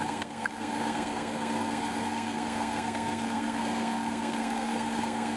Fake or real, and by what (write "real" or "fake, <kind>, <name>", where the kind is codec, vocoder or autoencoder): fake, codec, SNAC